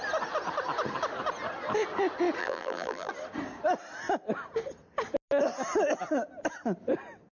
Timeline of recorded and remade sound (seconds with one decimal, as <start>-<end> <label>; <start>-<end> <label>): 0.0-2.4 recorded; 2.4-3.1 remade; 3.1-7.4 recorded